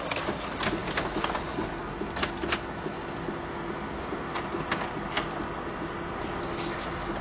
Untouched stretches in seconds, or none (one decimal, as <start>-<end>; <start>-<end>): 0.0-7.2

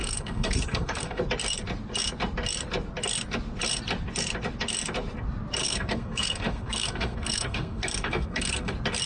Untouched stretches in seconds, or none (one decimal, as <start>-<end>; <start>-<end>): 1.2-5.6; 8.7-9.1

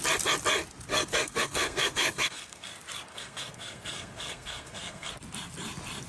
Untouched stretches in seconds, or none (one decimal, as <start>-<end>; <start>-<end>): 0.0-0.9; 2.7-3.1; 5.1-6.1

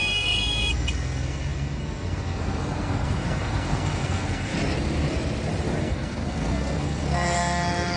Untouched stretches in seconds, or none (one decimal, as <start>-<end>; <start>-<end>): 4.5-5.8

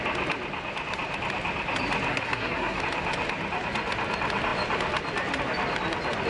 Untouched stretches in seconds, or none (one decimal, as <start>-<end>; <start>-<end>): 0.0-2.1; 2.8-6.3